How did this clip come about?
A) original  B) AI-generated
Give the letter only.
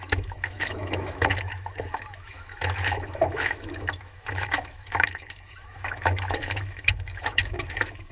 B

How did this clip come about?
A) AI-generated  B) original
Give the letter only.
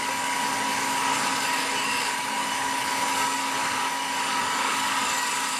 A